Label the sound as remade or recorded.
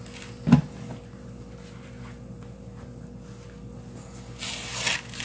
recorded